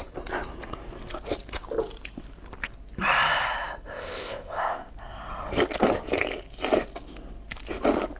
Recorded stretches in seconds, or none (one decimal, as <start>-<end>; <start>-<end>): 0.0-3.9; 4.9-8.2